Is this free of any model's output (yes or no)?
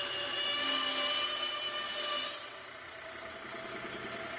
yes